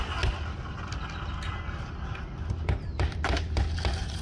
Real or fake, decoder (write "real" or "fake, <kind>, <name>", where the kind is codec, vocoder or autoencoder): real